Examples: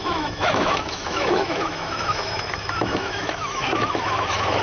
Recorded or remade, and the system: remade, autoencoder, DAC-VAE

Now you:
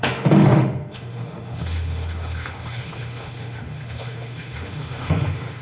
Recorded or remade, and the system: remade, autoencoder, DAC-VAE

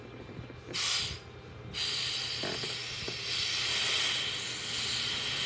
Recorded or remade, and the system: recorded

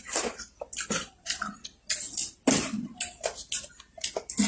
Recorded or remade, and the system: recorded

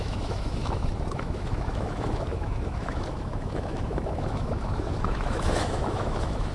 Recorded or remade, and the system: remade, autoencoder, DAC-VAE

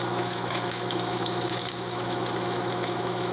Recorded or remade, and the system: remade, autoencoder, DAC-VAE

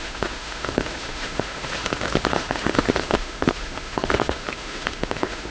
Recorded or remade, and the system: remade, autoencoder, DAC-VAE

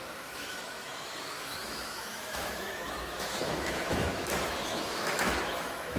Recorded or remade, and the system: remade, autoencoder, DAC-VAE